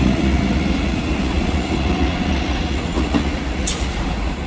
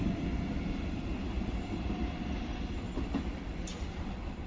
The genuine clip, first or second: second